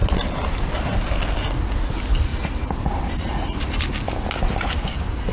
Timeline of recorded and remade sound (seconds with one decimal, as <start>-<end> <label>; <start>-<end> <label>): 0.0-5.3 recorded